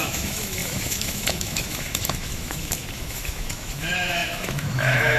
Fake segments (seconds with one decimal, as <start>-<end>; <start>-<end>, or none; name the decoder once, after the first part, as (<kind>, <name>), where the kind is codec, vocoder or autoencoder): 0.0-5.2 (autoencoder, DAC-VAE)